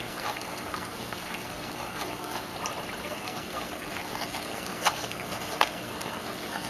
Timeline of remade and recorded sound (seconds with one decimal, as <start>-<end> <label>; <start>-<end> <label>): 0.0-2.5 remade; 2.5-3.0 recorded; 3.0-6.7 remade